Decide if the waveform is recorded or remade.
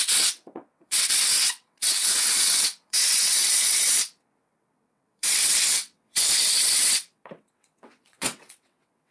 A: remade